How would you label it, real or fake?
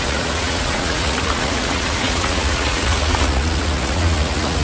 fake